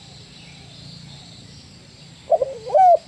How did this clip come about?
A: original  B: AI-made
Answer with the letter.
A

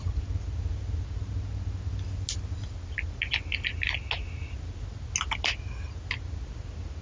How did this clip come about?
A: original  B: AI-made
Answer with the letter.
A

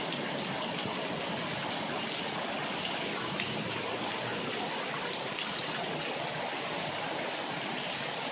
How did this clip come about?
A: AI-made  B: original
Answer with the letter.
B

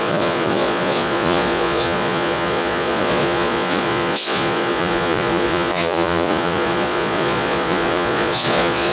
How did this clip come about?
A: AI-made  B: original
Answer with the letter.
A